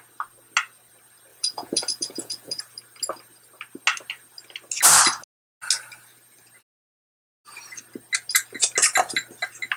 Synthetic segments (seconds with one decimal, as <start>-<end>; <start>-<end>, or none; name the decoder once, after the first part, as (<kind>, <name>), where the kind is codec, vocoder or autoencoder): 1.3-2.6 (vocoder, Vocos)